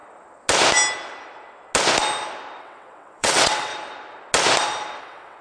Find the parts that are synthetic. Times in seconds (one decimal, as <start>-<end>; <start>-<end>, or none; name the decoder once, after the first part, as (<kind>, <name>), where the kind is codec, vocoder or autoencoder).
2.6-3.7 (vocoder, WaveNeXt); 5.0-5.4